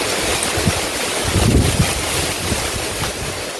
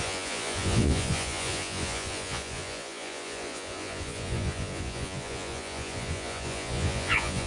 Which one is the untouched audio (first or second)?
first